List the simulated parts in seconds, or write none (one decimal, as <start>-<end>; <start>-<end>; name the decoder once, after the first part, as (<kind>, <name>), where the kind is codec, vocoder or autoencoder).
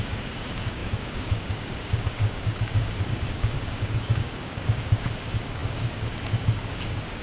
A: 0.0-7.2 (codec, DAC)